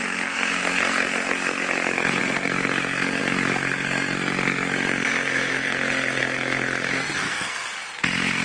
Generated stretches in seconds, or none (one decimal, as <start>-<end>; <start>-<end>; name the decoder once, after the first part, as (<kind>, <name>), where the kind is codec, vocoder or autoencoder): 0.0-8.4 (codec, SNAC)